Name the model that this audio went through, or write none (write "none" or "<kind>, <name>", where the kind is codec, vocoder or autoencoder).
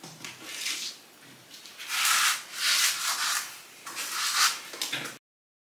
none